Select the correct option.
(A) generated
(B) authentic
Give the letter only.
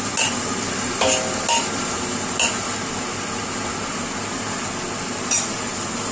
B